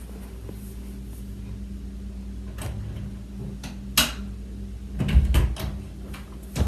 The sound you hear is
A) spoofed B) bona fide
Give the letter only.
B